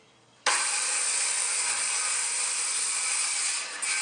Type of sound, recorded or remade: recorded